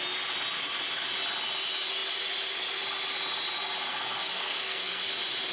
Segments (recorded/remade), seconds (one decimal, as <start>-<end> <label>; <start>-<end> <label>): 0.0-3.9 recorded; 3.9-5.0 remade; 5.0-5.5 recorded